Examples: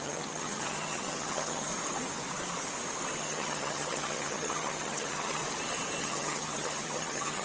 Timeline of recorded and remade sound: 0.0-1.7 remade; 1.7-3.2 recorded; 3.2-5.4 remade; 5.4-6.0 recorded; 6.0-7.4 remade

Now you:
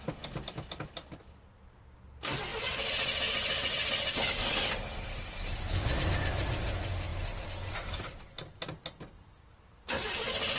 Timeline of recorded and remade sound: 0.0-4.9 recorded; 4.9-5.7 remade; 5.7-10.6 recorded

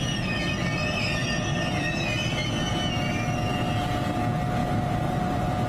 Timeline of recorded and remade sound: 0.0-4.6 recorded; 4.6-5.7 remade

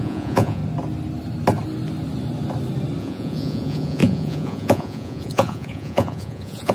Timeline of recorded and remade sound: 0.0-0.6 remade; 0.6-3.0 recorded; 3.0-6.7 remade

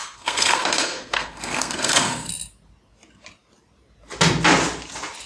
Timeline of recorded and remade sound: 0.0-2.3 remade; 2.3-5.3 recorded

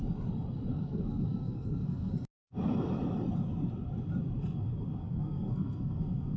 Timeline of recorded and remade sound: 0.0-0.7 recorded; 0.7-2.1 remade; 2.1-5.0 recorded; 5.0-6.4 remade